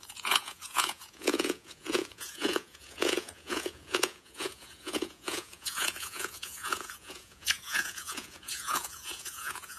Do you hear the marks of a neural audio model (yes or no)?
yes